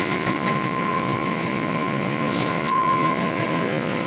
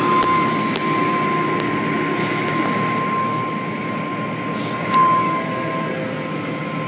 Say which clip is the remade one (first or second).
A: first